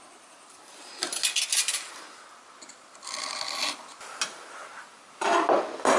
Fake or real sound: real